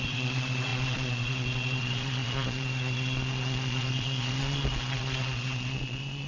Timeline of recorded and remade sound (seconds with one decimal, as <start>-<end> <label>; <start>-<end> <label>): 0.0-6.3 remade